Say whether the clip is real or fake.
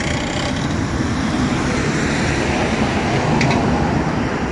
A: real